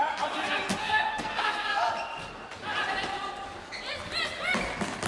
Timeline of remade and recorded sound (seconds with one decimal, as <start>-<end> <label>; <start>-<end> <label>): 0.0-0.8 recorded; 0.8-1.9 remade; 1.9-5.1 recorded